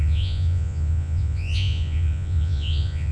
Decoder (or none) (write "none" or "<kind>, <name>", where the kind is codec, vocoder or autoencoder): vocoder, Vocos